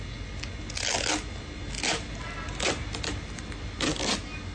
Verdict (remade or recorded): recorded